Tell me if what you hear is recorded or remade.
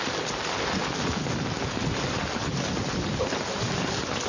recorded